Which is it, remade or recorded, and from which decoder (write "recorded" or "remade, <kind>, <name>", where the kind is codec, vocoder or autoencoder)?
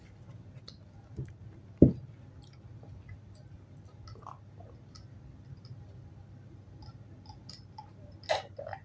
recorded